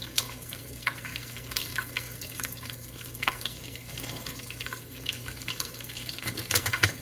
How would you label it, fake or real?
fake